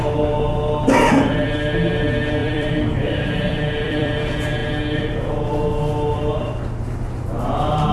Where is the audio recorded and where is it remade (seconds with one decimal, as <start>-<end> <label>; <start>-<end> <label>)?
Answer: 0.0-2.4 recorded; 2.4-4.1 remade; 4.1-7.9 recorded